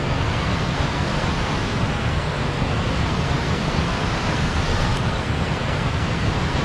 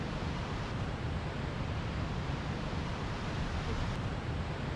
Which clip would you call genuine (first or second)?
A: second